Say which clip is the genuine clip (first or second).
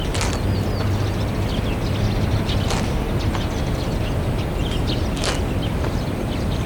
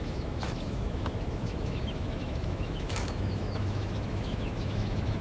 first